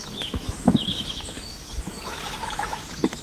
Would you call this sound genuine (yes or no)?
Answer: no